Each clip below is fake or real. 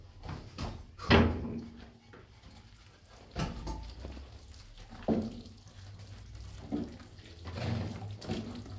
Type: real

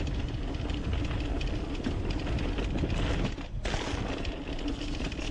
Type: real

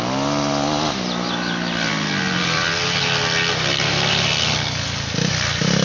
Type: real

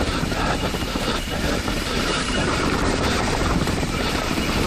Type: fake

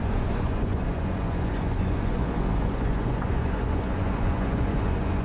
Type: fake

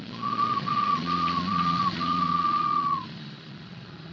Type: fake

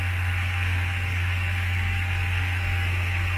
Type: fake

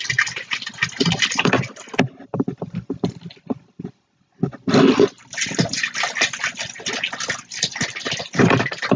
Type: real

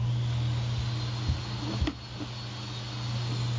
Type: real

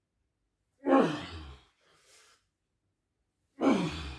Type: real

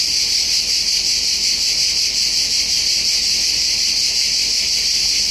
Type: real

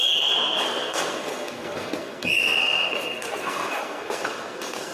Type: fake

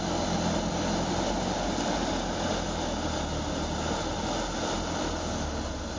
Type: real